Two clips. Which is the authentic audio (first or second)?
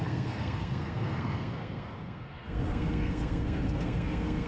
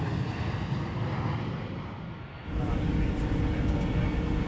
second